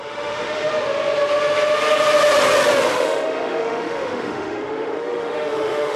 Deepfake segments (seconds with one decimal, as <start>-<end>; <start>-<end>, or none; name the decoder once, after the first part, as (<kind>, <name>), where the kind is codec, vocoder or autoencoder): 0.0-0.7 (autoencoder, DAC-VAE); 2.9-6.0